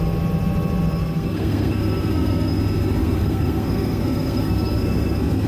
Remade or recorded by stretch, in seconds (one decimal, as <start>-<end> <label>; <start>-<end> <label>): 0.0-1.0 recorded; 1.0-2.6 remade; 2.6-3.0 recorded; 3.0-5.5 remade

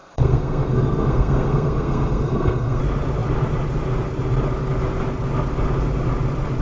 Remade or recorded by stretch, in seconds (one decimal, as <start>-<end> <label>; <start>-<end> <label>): 0.0-2.8 remade; 2.8-6.6 recorded

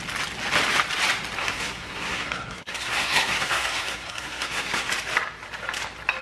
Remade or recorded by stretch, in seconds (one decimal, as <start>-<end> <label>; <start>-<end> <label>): 0.0-1.4 recorded; 1.4-4.9 remade; 4.9-6.2 recorded

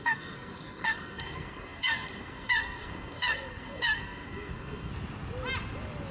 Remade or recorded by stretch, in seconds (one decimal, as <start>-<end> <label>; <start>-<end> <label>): 0.0-4.9 remade; 4.9-6.1 recorded

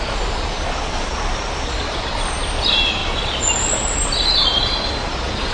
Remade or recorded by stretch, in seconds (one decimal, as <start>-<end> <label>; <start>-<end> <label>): 0.0-5.5 recorded

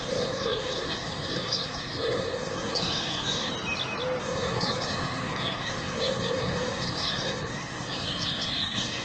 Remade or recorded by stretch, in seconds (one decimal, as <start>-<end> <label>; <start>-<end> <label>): 0.0-3.5 remade; 3.5-4.2 recorded; 4.2-9.0 remade

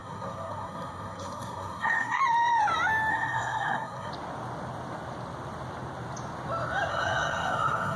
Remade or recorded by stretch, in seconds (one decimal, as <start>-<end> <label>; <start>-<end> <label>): 0.0-2.2 remade; 2.2-3.1 recorded; 3.1-4.1 remade; 4.1-6.9 recorded; 6.9-8.0 remade

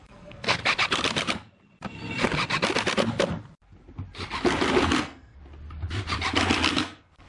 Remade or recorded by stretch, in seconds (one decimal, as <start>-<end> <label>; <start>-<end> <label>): 0.0-0.6 remade; 0.6-5.0 recorded; 5.0-5.4 remade; 5.4-6.8 recorded; 6.8-7.3 remade